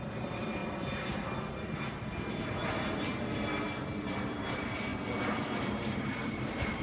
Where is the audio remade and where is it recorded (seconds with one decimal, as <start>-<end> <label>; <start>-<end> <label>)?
0.0-0.6 remade; 0.6-2.2 recorded; 2.2-3.1 remade; 3.1-4.0 recorded; 4.0-4.9 remade; 4.9-5.6 recorded; 5.6-6.8 remade